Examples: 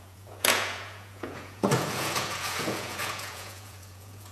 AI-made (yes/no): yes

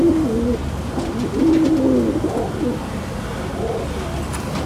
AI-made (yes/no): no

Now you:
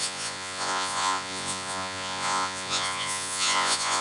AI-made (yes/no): yes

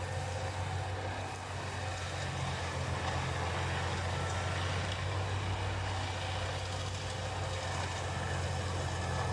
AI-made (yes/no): no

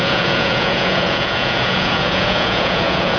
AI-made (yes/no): yes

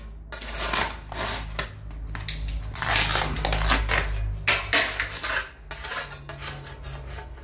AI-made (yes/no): no